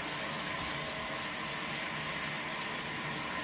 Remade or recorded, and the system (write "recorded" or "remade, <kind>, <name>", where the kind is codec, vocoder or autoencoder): recorded